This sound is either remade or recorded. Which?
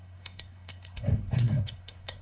remade